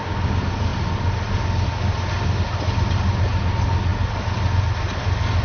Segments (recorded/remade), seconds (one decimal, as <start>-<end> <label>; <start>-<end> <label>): 0.0-5.4 recorded